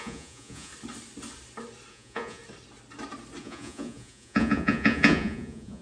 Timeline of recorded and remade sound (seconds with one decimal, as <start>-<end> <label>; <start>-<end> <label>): 0.0-0.7 remade; 0.7-1.9 recorded; 1.9-2.4 remade; 2.4-3.4 recorded; 3.4-5.8 remade